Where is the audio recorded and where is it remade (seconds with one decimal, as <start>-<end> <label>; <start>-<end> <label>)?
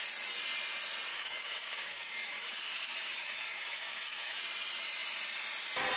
0.0-1.1 recorded; 1.1-4.4 remade; 4.4-6.0 recorded